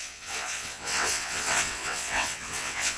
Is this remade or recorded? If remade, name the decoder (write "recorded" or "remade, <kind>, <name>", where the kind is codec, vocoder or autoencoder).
remade, vocoder, WaveNeXt